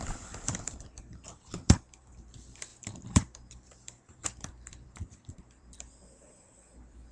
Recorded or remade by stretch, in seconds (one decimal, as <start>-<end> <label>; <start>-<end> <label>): 0.0-7.1 remade